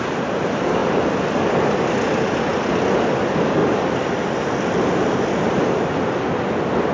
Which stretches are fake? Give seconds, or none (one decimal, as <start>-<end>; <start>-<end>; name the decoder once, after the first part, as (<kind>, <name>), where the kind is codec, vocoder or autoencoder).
0.8-1.4 (vocoder, BigVGAN v2); 3.6-5.2